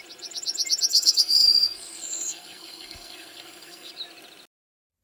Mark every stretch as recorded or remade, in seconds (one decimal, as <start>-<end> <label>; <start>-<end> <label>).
0.0-0.9 recorded; 0.9-3.9 remade; 3.9-5.0 recorded